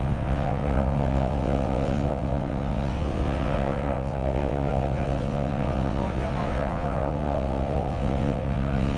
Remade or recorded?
remade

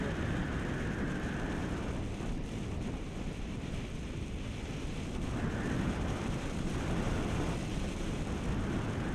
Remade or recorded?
remade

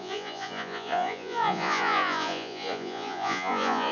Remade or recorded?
remade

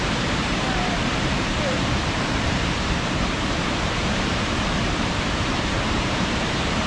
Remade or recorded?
remade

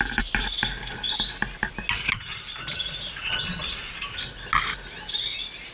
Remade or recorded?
recorded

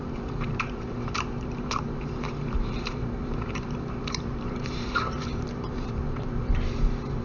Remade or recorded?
remade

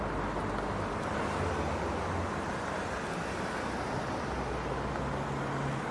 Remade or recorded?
recorded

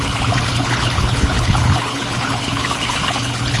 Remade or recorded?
remade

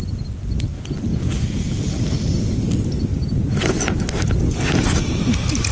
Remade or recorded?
recorded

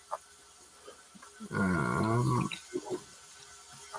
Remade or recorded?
recorded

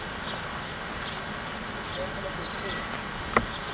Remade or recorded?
recorded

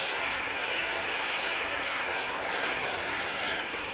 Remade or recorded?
remade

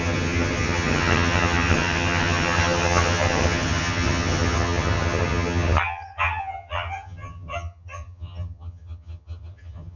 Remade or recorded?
remade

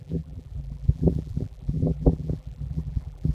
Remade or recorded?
remade